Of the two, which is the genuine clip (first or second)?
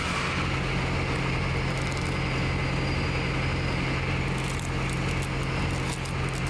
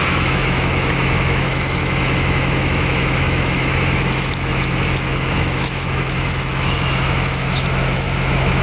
first